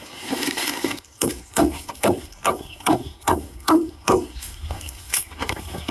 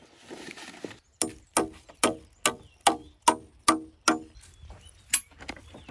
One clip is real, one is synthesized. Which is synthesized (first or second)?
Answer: first